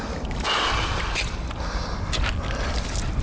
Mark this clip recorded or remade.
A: recorded